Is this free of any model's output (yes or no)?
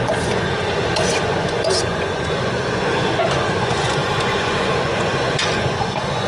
no